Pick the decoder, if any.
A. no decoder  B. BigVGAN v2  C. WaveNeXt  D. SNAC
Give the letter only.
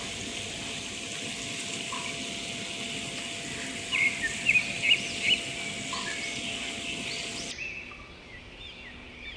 A